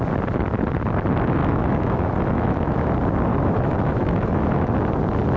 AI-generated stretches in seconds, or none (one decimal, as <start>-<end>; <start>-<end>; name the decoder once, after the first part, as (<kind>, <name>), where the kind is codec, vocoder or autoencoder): 1.4-2.9 (autoencoder, DAC-VAE); 3.3-4.7